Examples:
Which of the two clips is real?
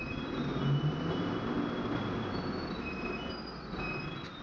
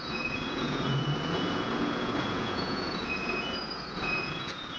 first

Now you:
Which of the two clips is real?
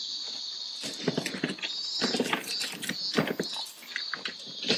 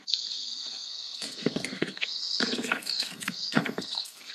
first